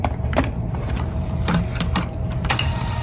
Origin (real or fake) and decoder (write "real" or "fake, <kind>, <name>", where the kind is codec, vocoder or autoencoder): fake, vocoder, BigVGAN v2